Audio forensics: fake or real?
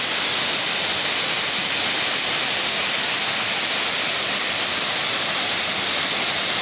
real